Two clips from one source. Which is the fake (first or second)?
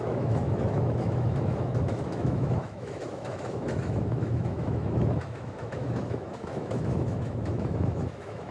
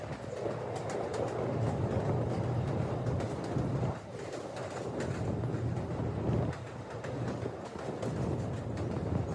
first